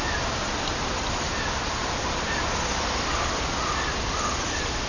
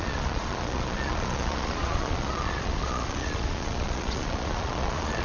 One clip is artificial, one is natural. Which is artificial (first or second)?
second